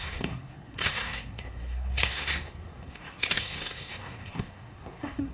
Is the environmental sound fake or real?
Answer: fake